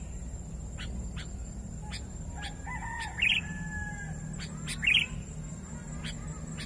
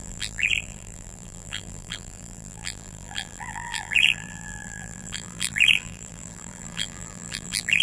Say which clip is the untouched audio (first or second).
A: first